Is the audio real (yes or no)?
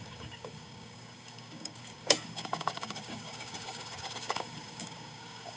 no